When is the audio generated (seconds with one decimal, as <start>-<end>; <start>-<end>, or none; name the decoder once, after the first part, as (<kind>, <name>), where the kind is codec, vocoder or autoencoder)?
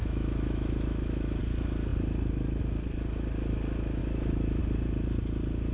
0.0-1.4 (autoencoder, DAC-VAE); 4.0-4.6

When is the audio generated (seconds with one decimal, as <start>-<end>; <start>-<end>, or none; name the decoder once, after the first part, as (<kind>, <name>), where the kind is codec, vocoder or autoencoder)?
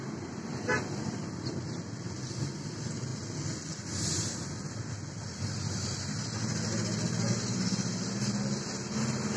none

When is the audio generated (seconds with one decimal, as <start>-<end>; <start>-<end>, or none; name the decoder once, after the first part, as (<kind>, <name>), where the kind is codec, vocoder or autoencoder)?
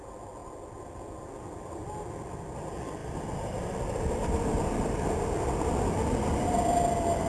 none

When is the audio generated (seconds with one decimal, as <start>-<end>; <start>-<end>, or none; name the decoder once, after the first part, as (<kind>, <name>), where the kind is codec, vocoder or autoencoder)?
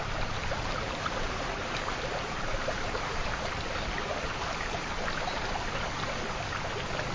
0.4-4.2 (vocoder, BigVGAN v2)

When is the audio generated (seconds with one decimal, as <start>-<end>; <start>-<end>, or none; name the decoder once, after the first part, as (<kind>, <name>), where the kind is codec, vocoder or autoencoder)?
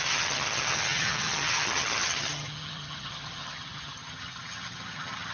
0.0-5.3 (vocoder, HiFi-GAN)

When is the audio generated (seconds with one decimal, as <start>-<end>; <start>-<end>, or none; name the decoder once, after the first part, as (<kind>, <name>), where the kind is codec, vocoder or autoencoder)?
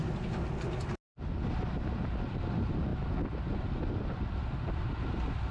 none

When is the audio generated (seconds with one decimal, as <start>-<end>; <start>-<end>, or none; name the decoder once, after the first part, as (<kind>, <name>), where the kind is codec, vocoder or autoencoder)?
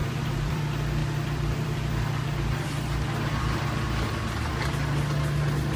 0.0-0.6 (vocoder, BigVGAN v2); 1.0-4.5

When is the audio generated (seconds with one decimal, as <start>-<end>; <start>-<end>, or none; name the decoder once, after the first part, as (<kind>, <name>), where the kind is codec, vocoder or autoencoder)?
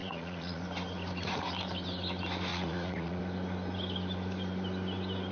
0.0-0.6 (vocoder, Vocos); 2.5-3.2